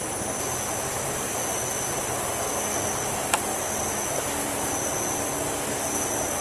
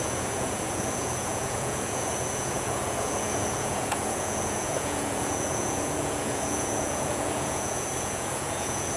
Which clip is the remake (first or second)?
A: second